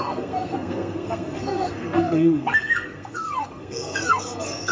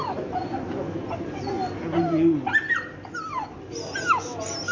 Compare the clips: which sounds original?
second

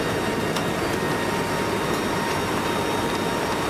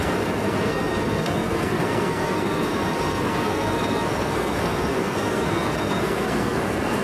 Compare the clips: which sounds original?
first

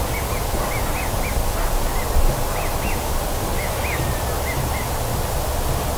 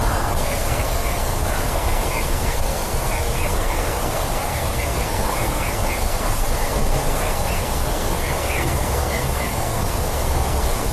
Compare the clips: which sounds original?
first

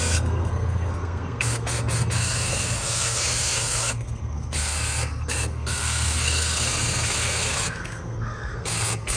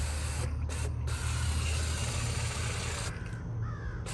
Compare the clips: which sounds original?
second